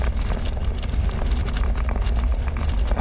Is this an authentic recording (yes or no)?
yes